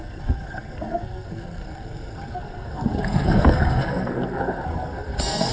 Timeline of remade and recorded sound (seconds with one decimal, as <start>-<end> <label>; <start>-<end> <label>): 0.0-5.5 remade